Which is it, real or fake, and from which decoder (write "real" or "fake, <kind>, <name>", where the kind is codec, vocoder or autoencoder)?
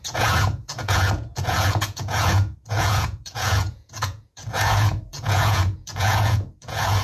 fake, vocoder, Vocos